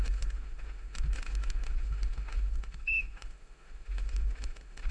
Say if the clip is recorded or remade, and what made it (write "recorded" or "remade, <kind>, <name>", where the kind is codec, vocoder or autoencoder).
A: remade, autoencoder, DAC-VAE